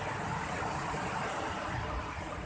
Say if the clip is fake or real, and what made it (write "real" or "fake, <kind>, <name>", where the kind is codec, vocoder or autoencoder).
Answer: real